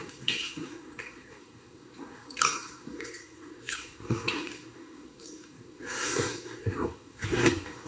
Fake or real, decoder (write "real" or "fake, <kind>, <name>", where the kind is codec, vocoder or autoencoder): fake, codec, SNAC